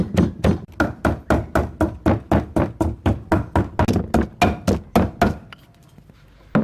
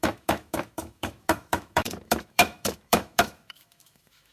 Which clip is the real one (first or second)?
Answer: first